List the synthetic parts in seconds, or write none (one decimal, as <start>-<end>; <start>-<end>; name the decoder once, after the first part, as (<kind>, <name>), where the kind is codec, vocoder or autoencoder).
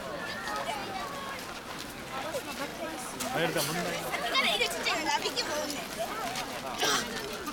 none